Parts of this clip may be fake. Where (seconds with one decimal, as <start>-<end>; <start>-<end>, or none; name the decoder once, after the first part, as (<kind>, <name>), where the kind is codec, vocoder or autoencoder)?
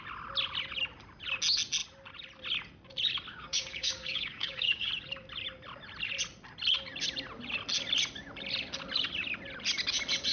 3.3-4.9 (codec, DAC)